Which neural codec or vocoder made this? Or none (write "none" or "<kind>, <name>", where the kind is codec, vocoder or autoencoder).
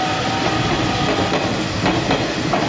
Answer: none